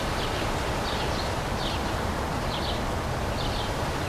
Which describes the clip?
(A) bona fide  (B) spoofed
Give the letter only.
A